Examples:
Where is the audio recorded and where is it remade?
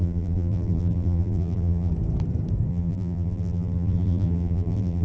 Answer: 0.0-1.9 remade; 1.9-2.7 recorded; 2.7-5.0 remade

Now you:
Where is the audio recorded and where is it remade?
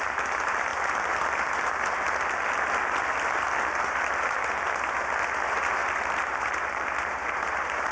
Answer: 0.0-5.8 recorded; 5.8-7.9 remade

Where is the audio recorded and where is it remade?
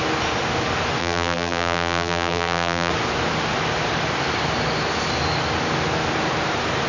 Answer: 0.0-1.0 recorded; 1.0-2.9 remade; 2.9-6.9 recorded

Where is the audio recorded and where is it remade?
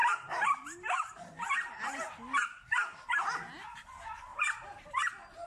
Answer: 0.0-1.8 remade; 1.8-4.3 recorded; 4.3-5.5 remade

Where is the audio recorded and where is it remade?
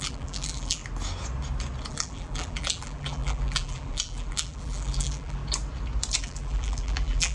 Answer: 0.0-0.8 remade; 0.8-1.9 recorded; 1.9-5.4 remade; 5.4-6.2 recorded; 6.2-7.3 remade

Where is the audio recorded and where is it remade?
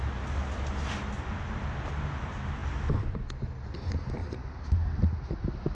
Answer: 0.0-4.2 recorded; 4.2-4.9 remade; 4.9-5.7 recorded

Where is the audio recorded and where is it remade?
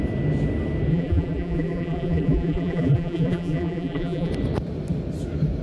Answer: 0.0-0.9 recorded; 0.9-4.3 remade; 4.3-5.6 recorded